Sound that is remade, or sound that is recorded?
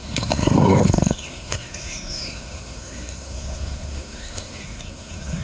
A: remade